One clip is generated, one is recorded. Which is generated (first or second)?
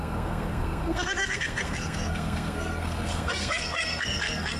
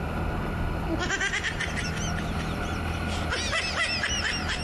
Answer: first